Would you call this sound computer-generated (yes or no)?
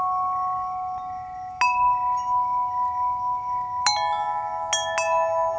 no